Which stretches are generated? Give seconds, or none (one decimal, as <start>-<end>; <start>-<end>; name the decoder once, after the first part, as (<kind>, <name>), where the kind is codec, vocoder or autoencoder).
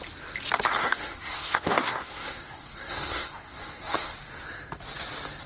0.8-4.1 (codec, SNAC)